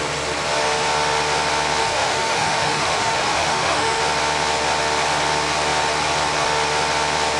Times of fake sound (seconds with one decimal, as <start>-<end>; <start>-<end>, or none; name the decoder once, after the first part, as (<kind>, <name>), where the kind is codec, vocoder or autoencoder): 1.8-4.0 (autoencoder, DAC-VAE)